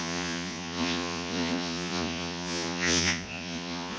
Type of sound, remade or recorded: remade